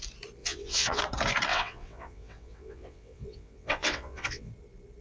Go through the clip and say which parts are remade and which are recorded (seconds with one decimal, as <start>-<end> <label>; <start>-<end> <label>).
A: 0.0-0.4 recorded; 0.4-1.0 remade; 1.0-1.5 recorded; 1.5-4.5 remade; 4.5-5.0 recorded